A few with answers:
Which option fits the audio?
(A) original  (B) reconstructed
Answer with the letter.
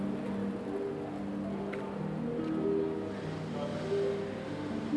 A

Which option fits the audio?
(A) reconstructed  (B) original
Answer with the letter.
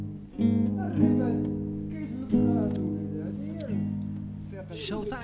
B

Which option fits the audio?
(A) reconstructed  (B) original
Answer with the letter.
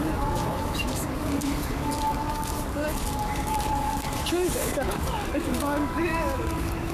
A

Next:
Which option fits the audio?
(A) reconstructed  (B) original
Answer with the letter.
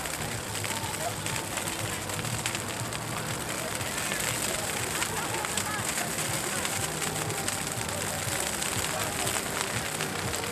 B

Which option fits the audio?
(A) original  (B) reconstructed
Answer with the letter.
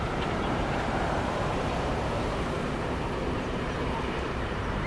B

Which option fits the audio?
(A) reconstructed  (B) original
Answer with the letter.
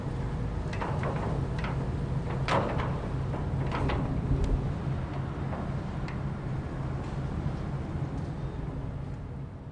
B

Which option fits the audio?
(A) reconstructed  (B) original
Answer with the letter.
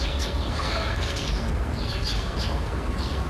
A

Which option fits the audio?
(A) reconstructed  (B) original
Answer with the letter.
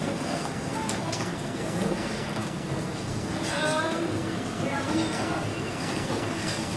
A